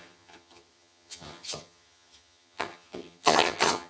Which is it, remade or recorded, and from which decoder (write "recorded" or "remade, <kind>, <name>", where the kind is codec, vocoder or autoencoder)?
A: remade, vocoder, HiFi-GAN